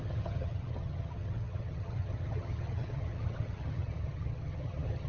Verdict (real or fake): fake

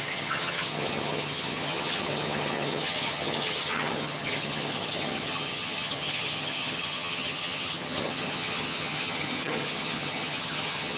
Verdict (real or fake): fake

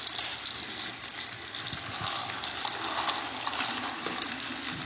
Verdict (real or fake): real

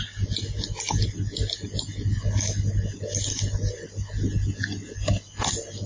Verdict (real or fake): real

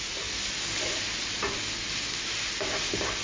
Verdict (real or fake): real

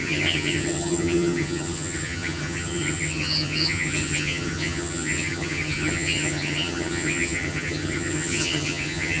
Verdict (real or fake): fake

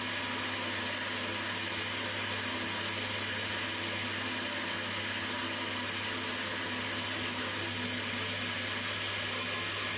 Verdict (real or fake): real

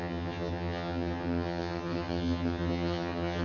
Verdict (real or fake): fake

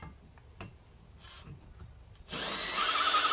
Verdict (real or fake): real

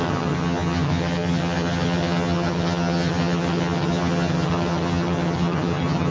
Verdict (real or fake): fake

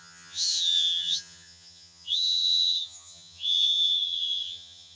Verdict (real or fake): fake